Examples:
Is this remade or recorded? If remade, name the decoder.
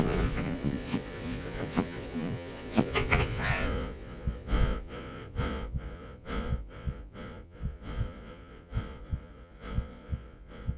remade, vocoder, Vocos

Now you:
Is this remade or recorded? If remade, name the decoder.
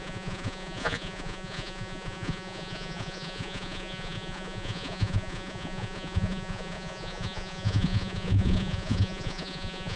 remade, vocoder, Vocos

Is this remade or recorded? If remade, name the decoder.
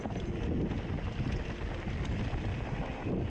recorded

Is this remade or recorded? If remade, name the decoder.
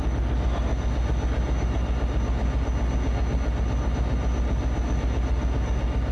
recorded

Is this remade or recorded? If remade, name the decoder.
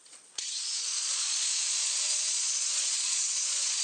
remade, vocoder, Vocos